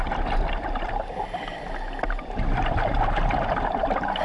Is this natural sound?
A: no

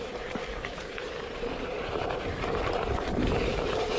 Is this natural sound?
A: no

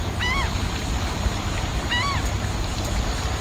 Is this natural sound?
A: yes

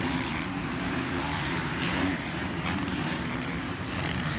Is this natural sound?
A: no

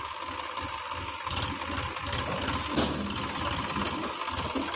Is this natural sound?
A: yes